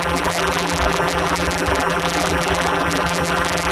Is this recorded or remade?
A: remade